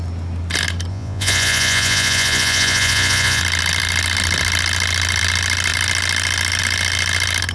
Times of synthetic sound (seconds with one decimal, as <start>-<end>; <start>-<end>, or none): 0.9-3.4